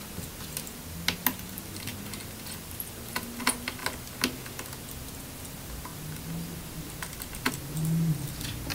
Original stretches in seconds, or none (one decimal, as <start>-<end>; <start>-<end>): 0.0-8.7